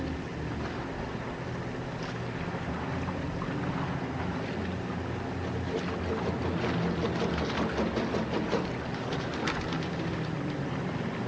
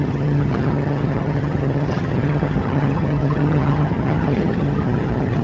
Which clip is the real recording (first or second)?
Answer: first